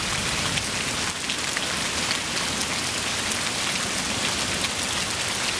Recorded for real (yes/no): yes